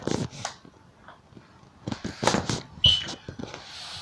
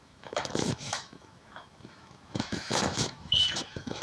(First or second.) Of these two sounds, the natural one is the first